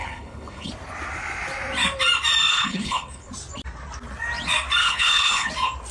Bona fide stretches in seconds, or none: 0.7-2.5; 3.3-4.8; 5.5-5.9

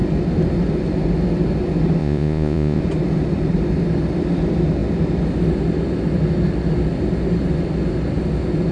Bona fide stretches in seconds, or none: 0.0-2.0; 2.8-8.7